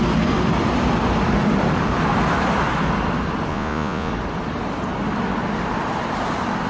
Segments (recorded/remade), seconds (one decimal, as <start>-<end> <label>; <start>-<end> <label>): 0.0-3.5 recorded; 3.5-4.1 remade; 4.1-6.7 recorded